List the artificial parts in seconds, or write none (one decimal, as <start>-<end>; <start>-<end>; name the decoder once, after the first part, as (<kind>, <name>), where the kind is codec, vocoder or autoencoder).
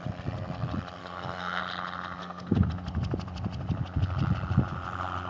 1.0-1.6 (codec, SNAC); 2.2-2.7